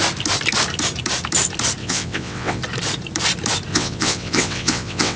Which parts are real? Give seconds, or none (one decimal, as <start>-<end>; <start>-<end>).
0.0-1.8; 2.6-3.7

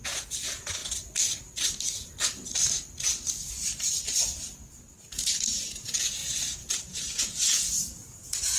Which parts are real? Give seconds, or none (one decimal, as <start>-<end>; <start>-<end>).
0.8-5.4; 6.2-6.7

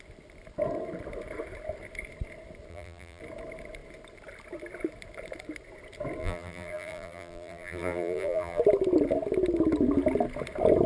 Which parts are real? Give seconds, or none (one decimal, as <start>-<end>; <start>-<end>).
0.0-2.7; 3.2-6.2; 8.6-10.9

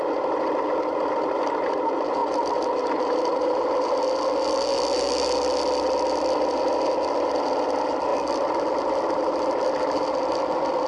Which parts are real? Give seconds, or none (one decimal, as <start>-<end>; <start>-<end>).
0.0-2.2; 2.9-10.9